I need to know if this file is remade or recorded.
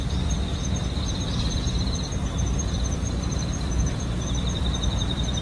remade